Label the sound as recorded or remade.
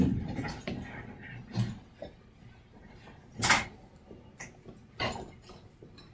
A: recorded